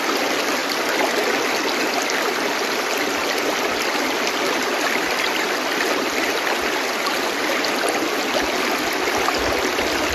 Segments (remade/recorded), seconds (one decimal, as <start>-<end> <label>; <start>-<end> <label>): 0.0-10.1 recorded

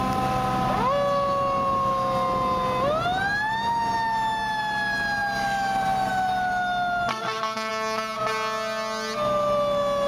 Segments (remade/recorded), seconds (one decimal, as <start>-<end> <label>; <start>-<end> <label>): 0.0-7.1 recorded; 7.1-7.7 remade; 7.7-10.1 recorded

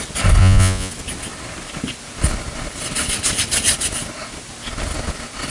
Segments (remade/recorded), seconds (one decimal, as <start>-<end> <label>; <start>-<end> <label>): 0.0-0.4 recorded; 0.4-0.9 remade; 0.9-5.5 recorded

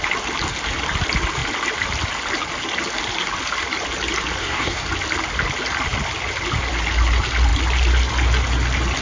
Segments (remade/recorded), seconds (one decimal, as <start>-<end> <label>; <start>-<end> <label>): 0.0-4.4 recorded; 4.4-4.9 remade; 4.9-9.0 recorded